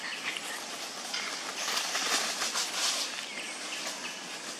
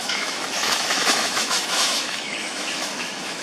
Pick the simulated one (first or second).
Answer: second